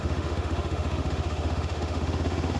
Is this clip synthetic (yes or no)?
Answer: yes